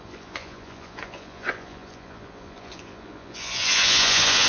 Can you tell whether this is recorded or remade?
remade